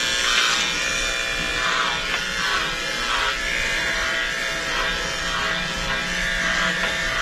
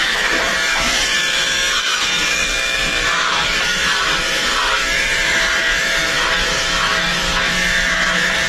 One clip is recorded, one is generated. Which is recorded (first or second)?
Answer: first